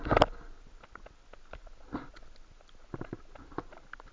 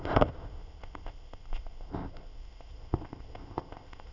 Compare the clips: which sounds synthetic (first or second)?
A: second